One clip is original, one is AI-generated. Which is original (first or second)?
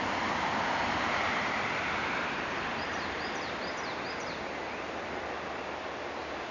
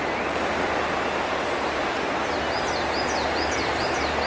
second